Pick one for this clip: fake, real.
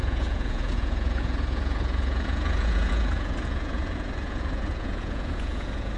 fake